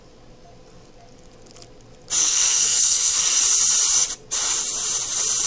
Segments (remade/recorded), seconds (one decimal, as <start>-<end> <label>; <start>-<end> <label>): 0.0-2.2 recorded; 2.2-3.2 remade; 3.2-5.5 recorded